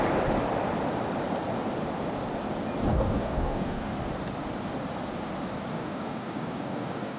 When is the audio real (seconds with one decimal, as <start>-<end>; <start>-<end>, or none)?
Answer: 0.0-2.9; 3.9-5.7